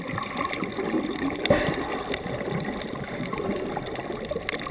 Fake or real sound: real